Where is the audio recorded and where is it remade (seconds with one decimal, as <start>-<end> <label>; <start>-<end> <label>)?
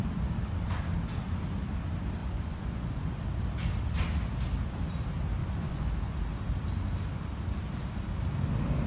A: 0.0-2.2 recorded; 2.2-3.1 remade; 3.1-5.4 recorded; 5.4-5.9 remade; 5.9-8.9 recorded